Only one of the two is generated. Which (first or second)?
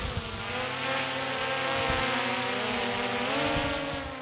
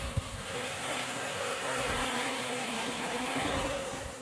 second